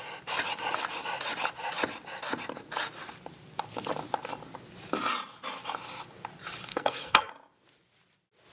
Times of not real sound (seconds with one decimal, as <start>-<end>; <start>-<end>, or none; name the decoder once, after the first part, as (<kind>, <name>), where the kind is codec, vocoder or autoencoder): 6.7-7.3 (codec, SNAC)

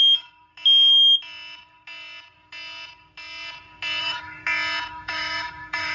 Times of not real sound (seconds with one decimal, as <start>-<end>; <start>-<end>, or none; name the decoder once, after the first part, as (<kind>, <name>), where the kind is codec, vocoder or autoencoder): 0.0-0.5 (autoencoder, DAC-VAE); 4.0-4.4; 4.9-5.9

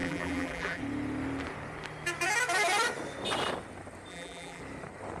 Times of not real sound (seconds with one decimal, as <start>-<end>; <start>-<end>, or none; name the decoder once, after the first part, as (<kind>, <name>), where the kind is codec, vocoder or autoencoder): 0.0-0.8 (vocoder, BigVGAN v2); 4.1-4.6

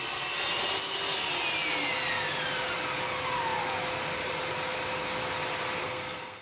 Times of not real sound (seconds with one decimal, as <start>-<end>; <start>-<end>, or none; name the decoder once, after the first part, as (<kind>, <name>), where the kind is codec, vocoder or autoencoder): 5.8-6.4 (codec, SNAC)

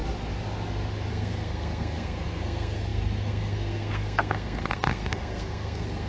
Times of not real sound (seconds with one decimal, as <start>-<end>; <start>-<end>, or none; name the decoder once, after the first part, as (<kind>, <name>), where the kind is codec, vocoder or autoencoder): 1.1-6.1 (codec, SNAC)

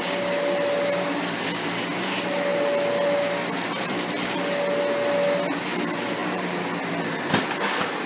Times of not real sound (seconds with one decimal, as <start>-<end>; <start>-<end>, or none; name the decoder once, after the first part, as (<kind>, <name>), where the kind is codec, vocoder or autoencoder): none

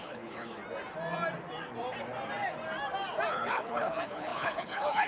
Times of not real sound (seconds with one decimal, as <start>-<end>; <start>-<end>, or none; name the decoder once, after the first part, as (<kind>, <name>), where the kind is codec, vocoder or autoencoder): 0.0-0.6 (codec, HILCodec); 3.3-5.1

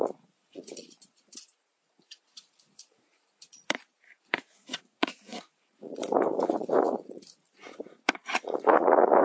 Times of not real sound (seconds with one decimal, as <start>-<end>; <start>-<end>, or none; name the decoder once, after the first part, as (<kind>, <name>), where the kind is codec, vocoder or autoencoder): 0.0-9.2 (vocoder, Vocos)